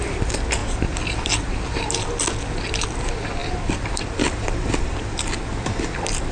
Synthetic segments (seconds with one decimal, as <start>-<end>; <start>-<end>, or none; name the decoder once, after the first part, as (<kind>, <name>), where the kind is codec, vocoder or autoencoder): 0.6-2.1 (vocoder, BigVGAN v2); 3.4-5.2